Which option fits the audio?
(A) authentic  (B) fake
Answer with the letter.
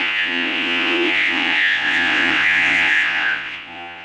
B